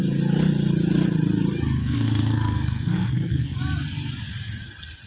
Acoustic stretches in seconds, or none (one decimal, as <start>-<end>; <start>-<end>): 0.0-1.8; 3.6-5.1